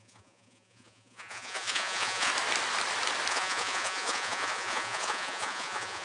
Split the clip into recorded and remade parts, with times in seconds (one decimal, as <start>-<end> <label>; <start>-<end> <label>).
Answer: 0.0-2.3 remade; 2.3-3.3 recorded; 3.3-6.0 remade